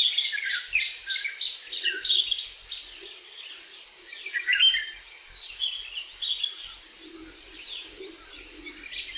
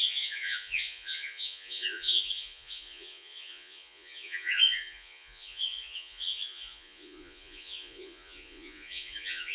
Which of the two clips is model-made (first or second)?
second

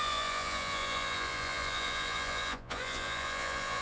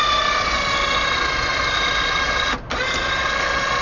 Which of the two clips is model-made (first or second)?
first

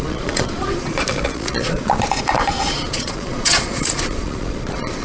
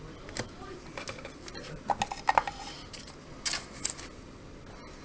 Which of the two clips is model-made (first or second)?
first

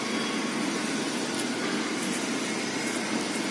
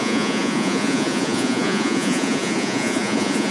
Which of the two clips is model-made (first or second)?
second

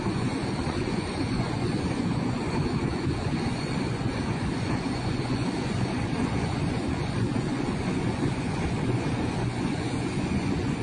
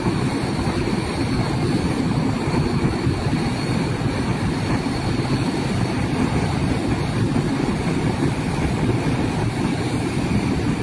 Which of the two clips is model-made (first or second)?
first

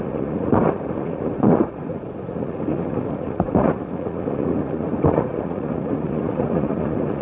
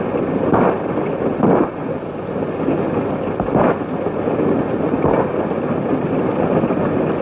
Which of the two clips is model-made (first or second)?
first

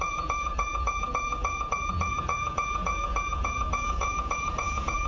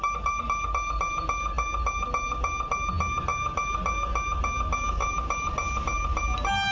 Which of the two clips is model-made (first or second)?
first